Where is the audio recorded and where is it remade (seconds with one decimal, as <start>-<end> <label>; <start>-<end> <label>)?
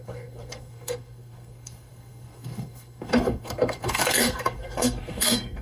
0.0-5.6 remade